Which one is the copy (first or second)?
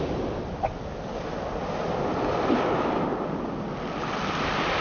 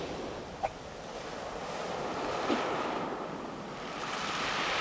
second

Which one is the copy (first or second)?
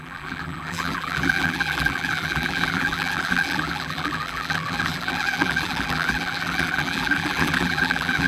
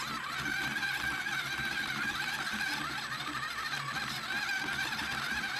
first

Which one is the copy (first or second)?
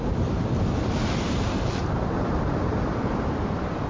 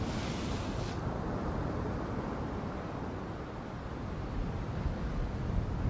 first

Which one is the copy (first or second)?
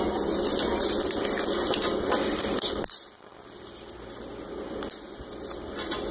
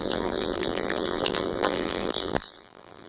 second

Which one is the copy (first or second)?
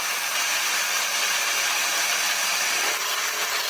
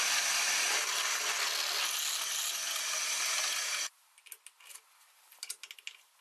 first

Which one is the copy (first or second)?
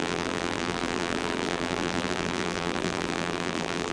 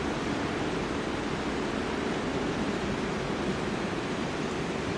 first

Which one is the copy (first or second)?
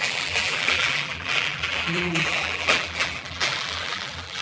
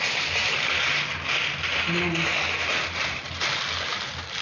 first